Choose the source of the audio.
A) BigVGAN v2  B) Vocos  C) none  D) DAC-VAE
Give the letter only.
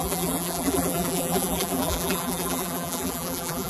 A